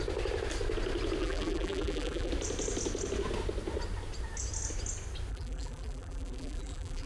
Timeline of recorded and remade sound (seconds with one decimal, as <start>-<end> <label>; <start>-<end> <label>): 0.0-1.2 recorded; 1.2-2.3 remade; 2.3-5.3 recorded; 5.3-7.1 remade